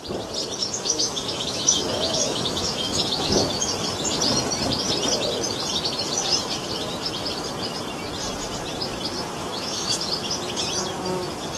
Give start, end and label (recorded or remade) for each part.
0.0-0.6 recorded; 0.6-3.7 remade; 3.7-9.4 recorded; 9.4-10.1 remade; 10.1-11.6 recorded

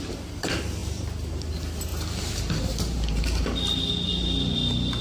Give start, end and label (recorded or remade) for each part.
0.0-0.8 recorded; 0.8-1.3 remade; 1.3-1.9 recorded; 1.9-3.2 remade; 3.2-5.0 recorded

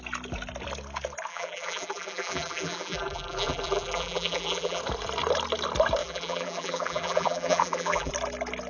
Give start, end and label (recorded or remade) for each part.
0.0-1.3 recorded; 1.3-4.8 remade; 4.8-6.0 recorded; 6.0-8.1 remade; 8.1-8.7 recorded

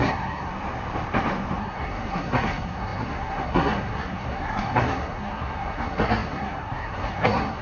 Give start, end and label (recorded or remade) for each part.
0.0-0.5 remade; 0.5-1.6 recorded; 1.6-7.6 remade

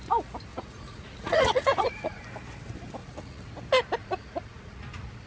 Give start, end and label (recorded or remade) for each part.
0.0-0.5 recorded; 0.5-2.2 remade; 2.2-3.0 recorded; 3.0-3.5 remade; 3.5-4.0 recorded; 4.0-4.8 remade; 4.8-5.3 recorded

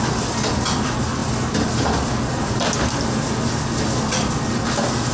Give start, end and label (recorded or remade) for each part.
0.0-5.1 recorded

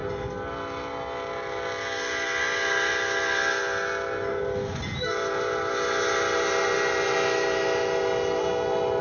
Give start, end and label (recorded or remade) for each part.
0.0-9.0 recorded

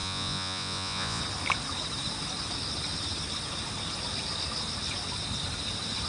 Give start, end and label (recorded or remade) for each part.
0.0-1.2 remade; 1.2-6.1 recorded